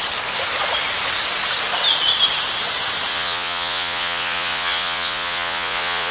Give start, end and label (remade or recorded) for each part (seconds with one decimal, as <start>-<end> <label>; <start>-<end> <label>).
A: 0.0-3.1 recorded; 3.1-6.1 remade